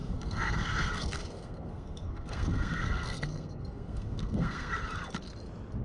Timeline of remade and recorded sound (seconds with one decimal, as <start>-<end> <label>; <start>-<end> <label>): 0.0-4.7 remade; 4.7-5.8 recorded

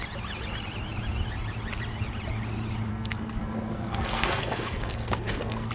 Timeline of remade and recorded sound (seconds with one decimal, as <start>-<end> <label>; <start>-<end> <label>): 0.0-2.9 recorded; 2.9-5.7 remade